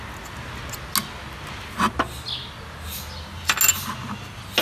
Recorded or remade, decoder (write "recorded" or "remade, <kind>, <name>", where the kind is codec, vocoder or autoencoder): recorded